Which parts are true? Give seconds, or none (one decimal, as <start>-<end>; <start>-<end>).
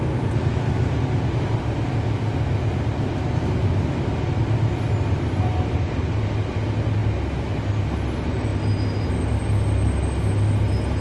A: 0.0-11.0